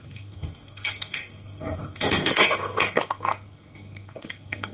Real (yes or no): no